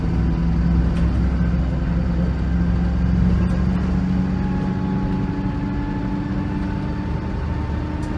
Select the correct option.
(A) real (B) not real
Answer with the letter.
A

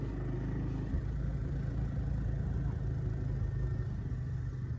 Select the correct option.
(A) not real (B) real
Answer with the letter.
B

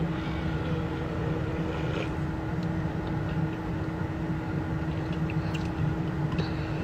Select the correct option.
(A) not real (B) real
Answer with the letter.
B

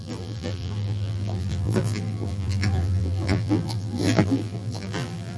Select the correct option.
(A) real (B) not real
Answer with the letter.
B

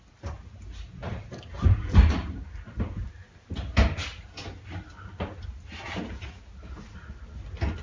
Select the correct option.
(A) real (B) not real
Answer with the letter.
A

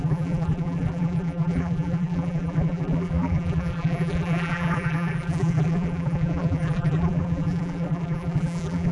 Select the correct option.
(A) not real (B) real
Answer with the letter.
A